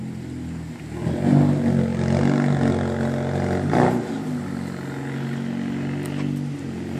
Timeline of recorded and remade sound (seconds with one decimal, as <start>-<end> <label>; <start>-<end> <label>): 0.0-7.0 recorded